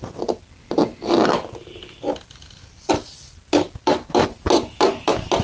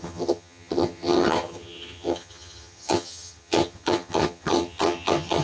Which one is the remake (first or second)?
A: second